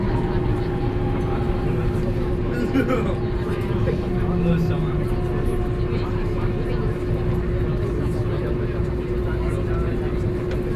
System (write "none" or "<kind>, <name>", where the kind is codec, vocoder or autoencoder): none